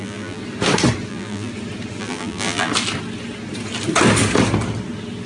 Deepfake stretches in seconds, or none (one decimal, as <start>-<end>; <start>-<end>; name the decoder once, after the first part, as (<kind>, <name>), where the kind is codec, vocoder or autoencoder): 0.0-0.4 (vocoder, BigVGAN v2); 1.1-1.5; 2.0-2.7